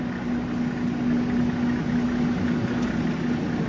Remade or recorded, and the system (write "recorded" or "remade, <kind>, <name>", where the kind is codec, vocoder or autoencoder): recorded